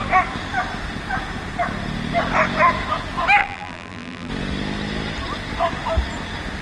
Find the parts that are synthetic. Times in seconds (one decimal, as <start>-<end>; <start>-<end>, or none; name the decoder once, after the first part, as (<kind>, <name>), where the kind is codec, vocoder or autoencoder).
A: 3.4-4.3 (vocoder, BigVGAN v2)